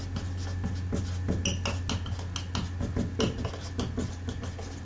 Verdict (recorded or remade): recorded